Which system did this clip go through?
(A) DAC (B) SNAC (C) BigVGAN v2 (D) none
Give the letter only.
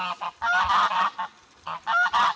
D